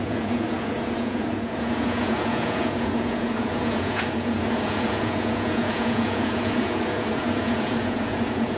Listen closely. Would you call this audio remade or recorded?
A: remade